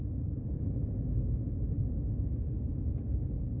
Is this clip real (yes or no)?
yes